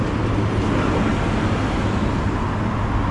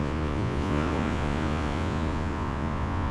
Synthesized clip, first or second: second